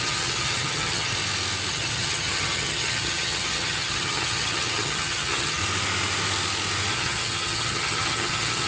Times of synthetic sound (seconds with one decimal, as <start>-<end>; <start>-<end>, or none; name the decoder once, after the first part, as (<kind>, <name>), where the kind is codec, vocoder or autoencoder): 0.0-1.1 (vocoder, HiFi-GAN); 1.7-5.6; 6.9-8.7